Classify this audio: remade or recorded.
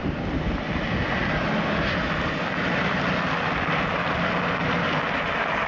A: recorded